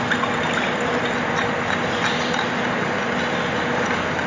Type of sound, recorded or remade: recorded